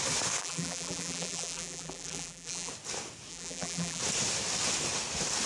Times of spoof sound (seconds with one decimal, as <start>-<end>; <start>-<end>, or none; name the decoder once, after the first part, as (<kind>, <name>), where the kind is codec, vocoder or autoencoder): 0.4-2.7 (vocoder, BigVGAN v2); 3.3-4.0